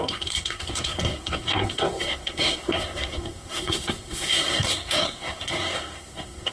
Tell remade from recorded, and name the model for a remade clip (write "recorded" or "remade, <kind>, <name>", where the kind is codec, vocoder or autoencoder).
remade, codec, SNAC